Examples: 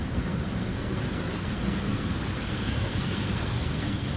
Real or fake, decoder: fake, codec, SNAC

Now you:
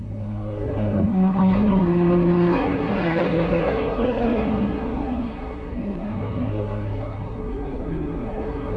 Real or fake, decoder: fake, codec, SNAC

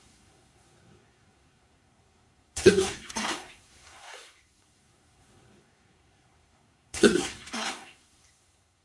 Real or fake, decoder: fake, codec, SNAC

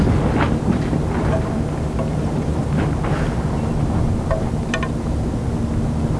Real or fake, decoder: real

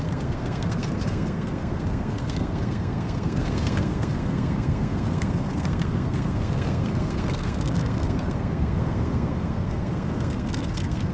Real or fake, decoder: fake, codec, SNAC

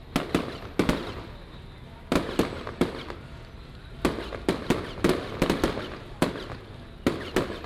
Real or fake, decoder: real